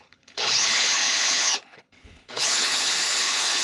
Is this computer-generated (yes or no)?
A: yes